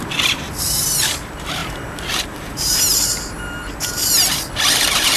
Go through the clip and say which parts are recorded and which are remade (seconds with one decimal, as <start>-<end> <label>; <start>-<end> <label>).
0.0-4.0 remade; 4.0-4.8 recorded; 4.8-5.2 remade